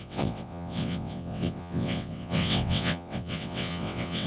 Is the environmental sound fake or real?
fake